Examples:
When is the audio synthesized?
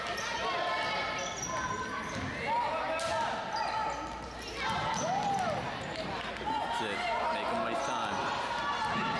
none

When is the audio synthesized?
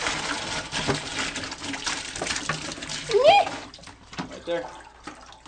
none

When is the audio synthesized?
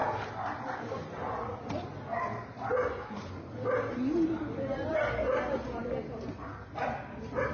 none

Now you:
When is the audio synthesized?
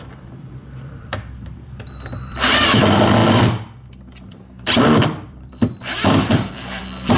0.0-7.2 (vocoder, BigVGAN v2)